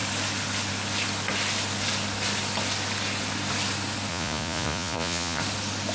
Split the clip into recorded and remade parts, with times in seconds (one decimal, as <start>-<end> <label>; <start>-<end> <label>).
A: 0.0-4.1 recorded; 4.1-5.4 remade; 5.4-5.9 recorded